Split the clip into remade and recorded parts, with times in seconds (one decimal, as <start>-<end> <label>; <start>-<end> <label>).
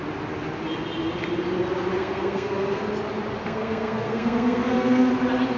0.0-2.0 recorded; 2.0-2.9 remade; 2.9-3.4 recorded; 3.4-5.1 remade; 5.1-5.6 recorded